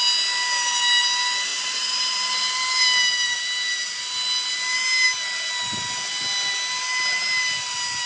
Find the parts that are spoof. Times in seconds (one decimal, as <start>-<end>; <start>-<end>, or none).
1.5-3.8